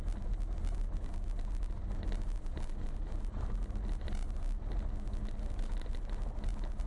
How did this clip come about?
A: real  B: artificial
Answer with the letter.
A